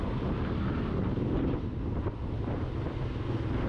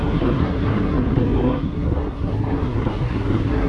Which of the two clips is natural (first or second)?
first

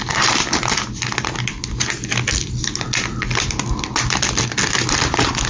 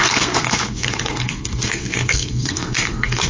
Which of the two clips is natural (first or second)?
first